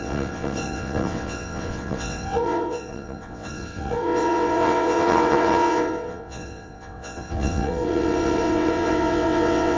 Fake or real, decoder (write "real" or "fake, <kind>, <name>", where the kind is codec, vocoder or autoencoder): fake, vocoder, WaveNeXt